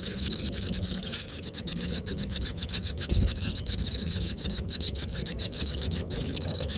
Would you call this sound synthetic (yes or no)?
yes